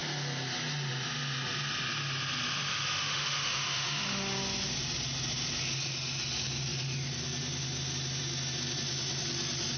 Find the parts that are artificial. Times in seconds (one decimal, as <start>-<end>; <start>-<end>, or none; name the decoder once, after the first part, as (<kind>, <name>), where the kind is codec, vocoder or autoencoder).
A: 2.7-4.0 (autoencoder, DAC-VAE)